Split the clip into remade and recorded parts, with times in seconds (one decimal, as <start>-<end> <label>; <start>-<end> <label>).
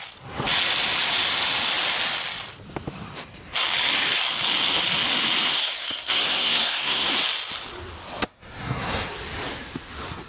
0.0-5.5 recorded; 5.5-7.1 remade; 7.1-8.3 recorded; 8.3-9.1 remade; 9.1-10.3 recorded